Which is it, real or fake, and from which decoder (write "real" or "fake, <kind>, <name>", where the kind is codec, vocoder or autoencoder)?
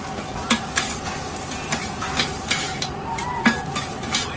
real